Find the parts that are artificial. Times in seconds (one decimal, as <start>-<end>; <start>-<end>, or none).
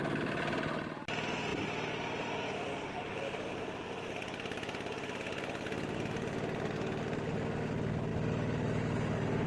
none